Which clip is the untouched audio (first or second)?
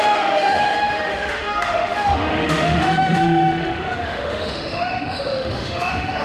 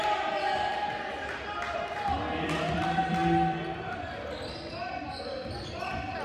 second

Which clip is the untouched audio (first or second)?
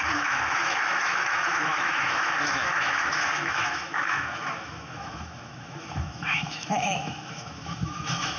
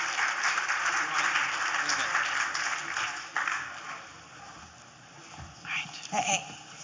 second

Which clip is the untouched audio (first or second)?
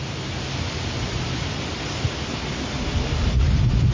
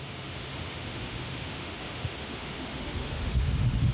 first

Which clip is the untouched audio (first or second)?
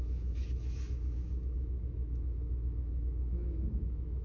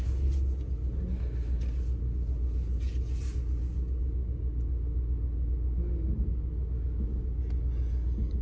second